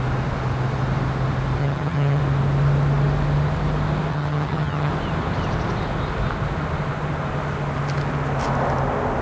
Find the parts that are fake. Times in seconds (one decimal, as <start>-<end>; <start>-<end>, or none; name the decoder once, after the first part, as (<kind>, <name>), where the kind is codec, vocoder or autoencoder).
1.6-2.2 (vocoder, HiFi-GAN); 4.1-4.9